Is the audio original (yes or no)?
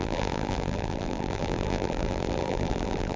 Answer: no